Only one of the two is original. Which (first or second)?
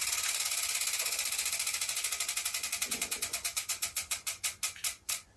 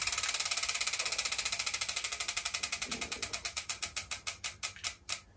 second